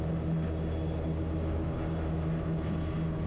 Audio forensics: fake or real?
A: real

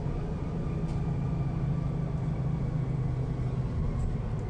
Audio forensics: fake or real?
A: real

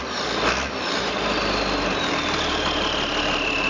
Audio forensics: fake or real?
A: real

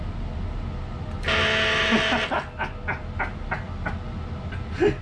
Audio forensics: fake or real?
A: real